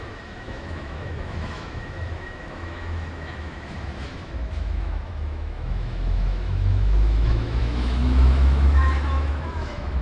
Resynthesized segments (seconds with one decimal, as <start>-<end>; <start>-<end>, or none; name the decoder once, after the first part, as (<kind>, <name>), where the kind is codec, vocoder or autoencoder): 0.0-10.0 (autoencoder, DAC-VAE)